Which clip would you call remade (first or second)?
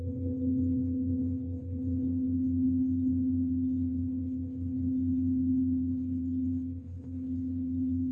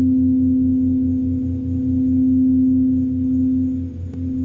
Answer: first